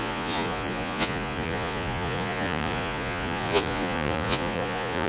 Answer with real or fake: fake